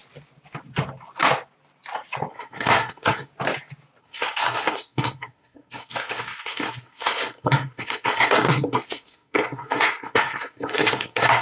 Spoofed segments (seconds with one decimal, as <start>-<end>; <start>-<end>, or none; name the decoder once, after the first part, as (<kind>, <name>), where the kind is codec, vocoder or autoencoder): 2.3-3.3 (codec, SNAC); 4.0-11.4